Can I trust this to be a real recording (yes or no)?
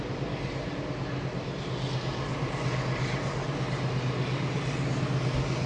yes